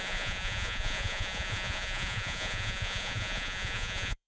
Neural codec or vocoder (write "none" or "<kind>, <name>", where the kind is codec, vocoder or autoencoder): vocoder, Vocos